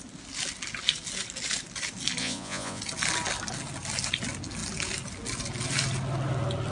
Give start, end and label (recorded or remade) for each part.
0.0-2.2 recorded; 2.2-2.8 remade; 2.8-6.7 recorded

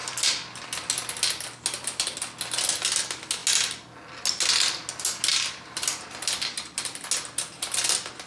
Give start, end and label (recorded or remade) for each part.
0.0-0.6 remade; 0.6-5.3 recorded; 5.3-6.0 remade; 6.0-8.3 recorded

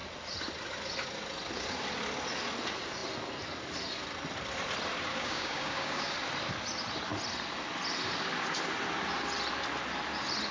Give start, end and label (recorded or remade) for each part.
0.0-5.1 recorded; 5.1-6.1 remade; 6.1-10.5 recorded

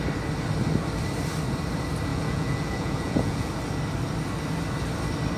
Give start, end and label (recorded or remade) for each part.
0.0-2.1 recorded; 2.1-3.5 remade; 3.5-5.4 recorded

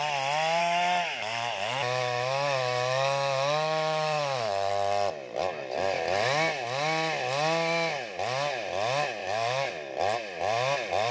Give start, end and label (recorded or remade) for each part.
0.0-0.6 recorded; 0.6-4.7 remade; 4.7-9.2 recorded; 9.2-9.7 remade; 9.7-11.1 recorded